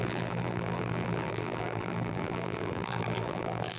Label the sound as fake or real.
fake